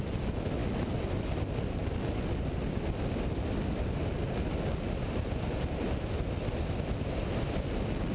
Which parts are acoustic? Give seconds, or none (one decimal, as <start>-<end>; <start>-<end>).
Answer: 0.0-8.1